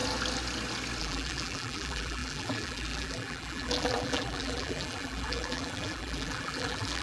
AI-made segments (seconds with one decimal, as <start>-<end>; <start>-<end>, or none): 1.0-7.0